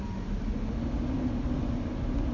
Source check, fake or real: real